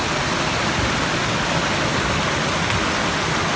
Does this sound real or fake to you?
real